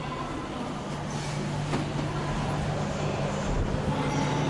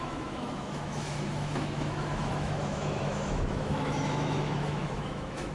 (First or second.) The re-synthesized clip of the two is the second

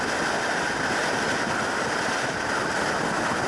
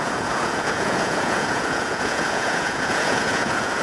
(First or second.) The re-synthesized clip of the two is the second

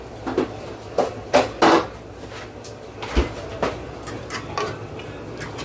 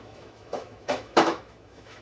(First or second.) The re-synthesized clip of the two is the second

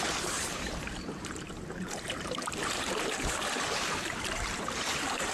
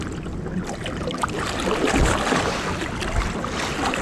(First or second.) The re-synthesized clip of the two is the first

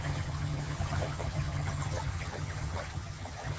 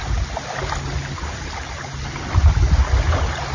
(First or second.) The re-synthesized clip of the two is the first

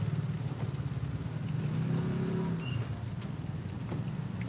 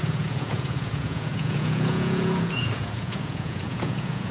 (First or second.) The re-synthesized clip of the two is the second